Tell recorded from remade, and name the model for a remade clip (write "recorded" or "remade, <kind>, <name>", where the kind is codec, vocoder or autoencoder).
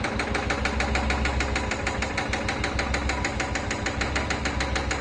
recorded